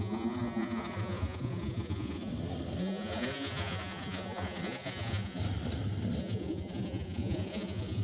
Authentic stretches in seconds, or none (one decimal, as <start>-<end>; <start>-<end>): 2.3-2.8; 5.4-6.2